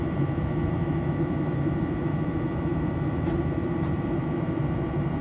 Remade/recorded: remade